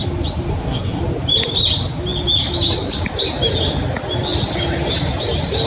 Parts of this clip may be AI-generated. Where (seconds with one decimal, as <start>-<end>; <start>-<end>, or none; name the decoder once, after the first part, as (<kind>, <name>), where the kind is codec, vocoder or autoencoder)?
0.5-1.0 (codec, SNAC)